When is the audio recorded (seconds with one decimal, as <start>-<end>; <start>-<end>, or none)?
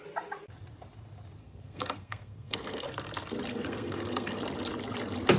0.0-1.4; 2.9-3.5; 4.4-5.4